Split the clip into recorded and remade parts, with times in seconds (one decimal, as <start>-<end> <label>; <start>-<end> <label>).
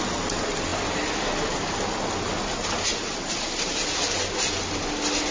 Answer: 0.0-5.3 recorded